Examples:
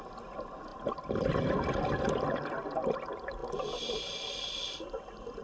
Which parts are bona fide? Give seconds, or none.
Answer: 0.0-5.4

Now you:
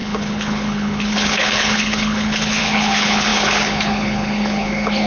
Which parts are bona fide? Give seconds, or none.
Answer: none